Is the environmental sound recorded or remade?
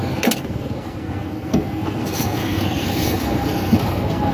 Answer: remade